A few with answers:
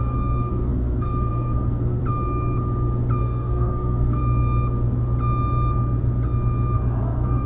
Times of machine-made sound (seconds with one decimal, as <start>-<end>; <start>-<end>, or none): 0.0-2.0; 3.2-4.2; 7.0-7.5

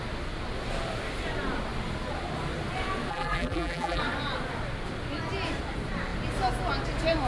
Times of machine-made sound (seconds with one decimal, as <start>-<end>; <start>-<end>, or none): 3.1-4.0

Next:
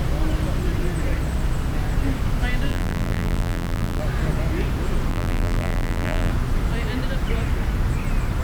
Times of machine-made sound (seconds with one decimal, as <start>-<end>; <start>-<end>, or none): 2.7-4.0; 5.1-6.3